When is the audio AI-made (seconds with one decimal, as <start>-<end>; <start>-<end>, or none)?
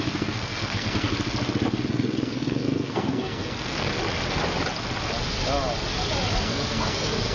0.0-1.1; 1.9-3.9; 6.4-7.3